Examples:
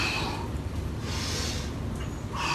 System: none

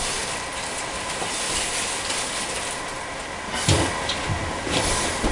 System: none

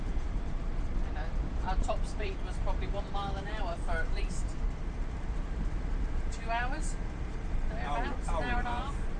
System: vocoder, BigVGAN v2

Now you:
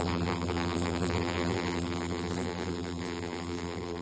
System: vocoder, BigVGAN v2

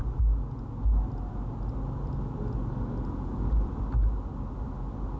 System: none